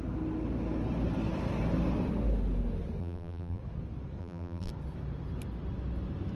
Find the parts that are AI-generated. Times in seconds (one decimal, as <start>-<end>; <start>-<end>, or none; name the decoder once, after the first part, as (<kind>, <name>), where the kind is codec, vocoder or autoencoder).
3.0-3.6 (vocoder, BigVGAN v2); 4.2-4.7

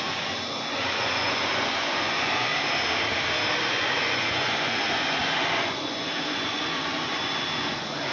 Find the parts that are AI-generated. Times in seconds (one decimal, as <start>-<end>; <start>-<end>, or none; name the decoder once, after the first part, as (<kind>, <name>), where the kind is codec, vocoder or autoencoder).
0.0-2.5 (vocoder, Vocos); 3.6-8.1

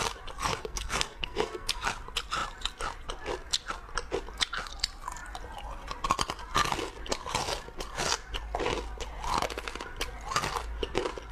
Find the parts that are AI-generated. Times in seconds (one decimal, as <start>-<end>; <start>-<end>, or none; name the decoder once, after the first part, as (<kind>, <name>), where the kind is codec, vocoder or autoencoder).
0.4-1.9 (codec, SNAC)